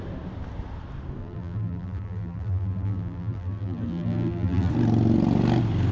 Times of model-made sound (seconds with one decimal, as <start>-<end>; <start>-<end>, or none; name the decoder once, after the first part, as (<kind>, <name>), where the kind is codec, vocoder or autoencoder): 1.2-4.7 (vocoder, BigVGAN v2)